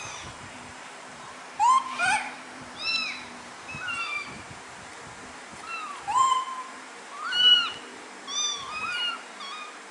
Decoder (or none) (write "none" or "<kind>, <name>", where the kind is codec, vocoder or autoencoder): vocoder, BigVGAN v2